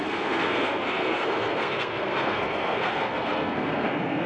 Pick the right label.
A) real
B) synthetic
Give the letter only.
B